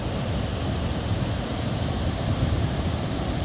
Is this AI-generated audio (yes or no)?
no